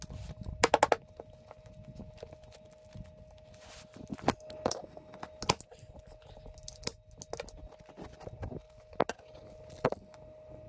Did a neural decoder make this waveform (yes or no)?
no